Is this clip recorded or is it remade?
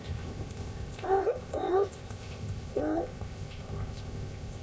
remade